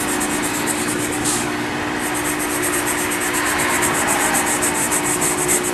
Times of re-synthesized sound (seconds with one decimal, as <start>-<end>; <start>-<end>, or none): 0.5-1.7